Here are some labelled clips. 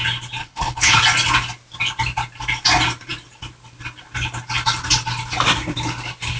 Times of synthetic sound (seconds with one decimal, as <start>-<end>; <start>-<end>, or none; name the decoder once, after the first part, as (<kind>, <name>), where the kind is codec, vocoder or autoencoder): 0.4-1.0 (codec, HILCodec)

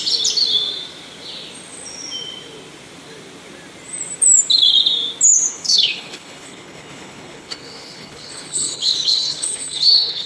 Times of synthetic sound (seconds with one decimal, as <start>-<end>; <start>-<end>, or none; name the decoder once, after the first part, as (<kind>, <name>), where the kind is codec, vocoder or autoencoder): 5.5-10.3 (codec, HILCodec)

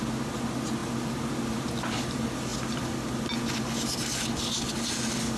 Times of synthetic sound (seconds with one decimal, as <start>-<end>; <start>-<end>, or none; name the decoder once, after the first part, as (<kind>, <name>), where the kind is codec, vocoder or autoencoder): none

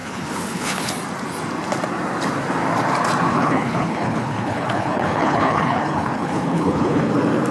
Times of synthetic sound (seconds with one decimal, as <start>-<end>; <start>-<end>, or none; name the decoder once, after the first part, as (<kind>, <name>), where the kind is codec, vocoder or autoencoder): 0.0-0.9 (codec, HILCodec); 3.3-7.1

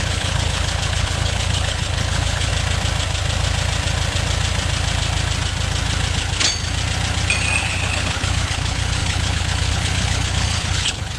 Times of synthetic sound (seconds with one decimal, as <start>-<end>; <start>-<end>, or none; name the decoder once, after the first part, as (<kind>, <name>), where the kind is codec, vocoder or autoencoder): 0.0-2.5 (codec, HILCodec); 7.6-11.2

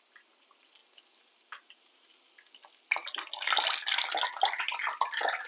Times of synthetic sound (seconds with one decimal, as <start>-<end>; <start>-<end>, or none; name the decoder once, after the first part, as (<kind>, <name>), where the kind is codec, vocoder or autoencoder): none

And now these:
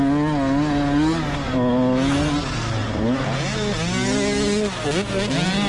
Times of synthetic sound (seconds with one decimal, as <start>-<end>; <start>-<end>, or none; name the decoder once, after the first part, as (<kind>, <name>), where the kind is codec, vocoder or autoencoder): none

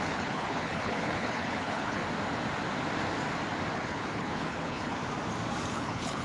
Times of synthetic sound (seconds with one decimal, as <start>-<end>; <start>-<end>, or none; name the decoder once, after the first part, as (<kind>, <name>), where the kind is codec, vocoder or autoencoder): 0.0-2.0 (codec, HILCodec); 3.7-5.0; 5.7-6.2